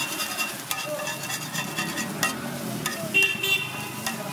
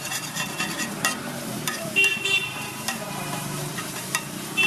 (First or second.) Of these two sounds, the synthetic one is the second